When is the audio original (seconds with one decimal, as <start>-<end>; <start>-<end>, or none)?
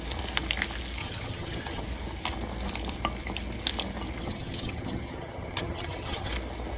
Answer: 0.0-1.0; 1.8-4.2; 6.3-6.8